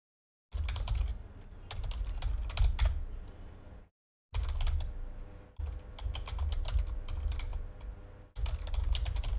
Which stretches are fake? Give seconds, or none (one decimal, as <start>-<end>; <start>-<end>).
none